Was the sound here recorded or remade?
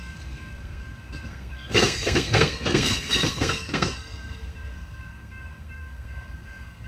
remade